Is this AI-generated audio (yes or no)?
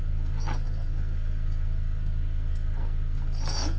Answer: yes